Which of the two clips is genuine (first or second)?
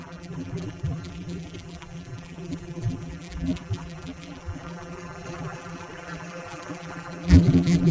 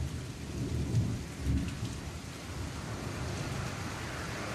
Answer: second